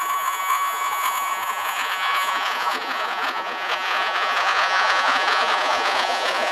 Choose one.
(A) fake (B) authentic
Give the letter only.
A